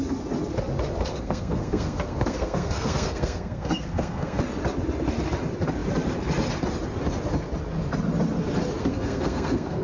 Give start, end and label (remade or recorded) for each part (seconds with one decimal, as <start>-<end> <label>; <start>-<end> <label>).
0.0-1.1 recorded; 1.1-4.4 remade; 4.4-8.8 recorded; 8.8-9.8 remade